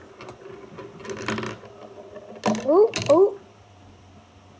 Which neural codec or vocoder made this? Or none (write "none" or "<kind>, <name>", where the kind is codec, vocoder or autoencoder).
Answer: none